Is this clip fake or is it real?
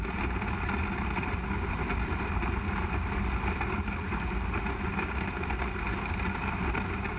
real